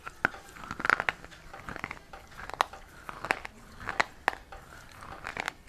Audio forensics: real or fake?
real